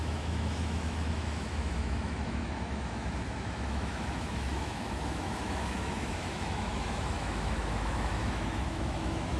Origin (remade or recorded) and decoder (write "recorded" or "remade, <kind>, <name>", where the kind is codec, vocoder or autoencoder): remade, autoencoder, DAC-VAE